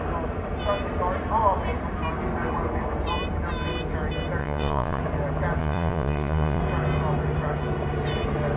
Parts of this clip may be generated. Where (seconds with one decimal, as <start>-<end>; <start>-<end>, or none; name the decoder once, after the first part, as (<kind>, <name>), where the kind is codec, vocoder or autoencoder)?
4.4-5.0 (vocoder, Vocos); 5.6-6.6